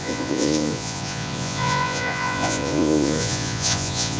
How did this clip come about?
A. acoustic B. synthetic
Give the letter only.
B